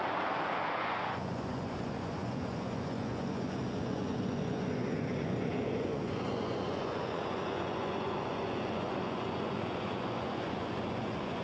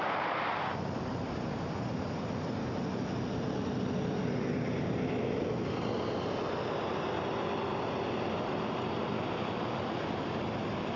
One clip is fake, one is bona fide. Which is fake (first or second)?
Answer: first